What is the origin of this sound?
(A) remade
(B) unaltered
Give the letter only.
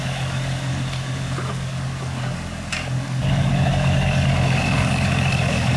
A